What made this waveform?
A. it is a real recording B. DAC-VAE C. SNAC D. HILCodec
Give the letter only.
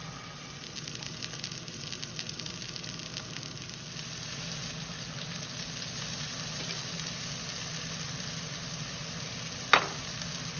A